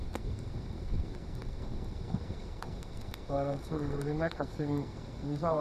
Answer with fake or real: fake